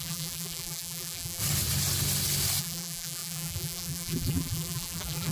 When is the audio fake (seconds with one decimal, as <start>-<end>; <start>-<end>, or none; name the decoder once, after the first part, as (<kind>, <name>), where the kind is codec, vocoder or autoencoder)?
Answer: 0.0-1.4 (vocoder, BigVGAN v2); 2.6-5.3